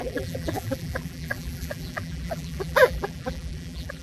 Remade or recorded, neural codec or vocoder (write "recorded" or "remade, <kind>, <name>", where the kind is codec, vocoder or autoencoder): remade, vocoder, BigVGAN v2